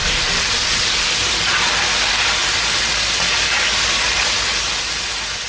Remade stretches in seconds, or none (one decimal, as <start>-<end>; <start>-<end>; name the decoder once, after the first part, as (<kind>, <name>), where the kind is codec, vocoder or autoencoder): none